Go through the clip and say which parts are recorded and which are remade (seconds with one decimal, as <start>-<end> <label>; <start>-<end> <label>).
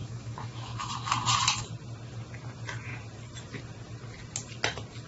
0.0-0.9 remade; 0.9-5.1 recorded